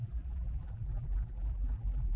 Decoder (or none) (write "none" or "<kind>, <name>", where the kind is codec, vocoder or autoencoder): vocoder, BigVGAN v2